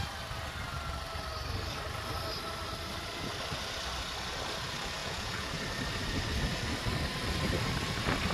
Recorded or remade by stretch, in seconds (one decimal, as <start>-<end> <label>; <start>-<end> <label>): 0.0-5.0 recorded; 5.0-5.5 remade; 5.5-8.3 recorded